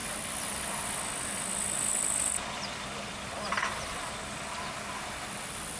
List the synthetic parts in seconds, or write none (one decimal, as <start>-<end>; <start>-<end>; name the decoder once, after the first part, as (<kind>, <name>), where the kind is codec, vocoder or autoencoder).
1.9-5.8 (vocoder, BigVGAN v2)